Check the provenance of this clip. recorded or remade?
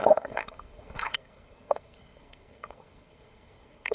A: remade